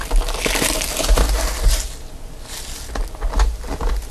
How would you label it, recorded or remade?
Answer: recorded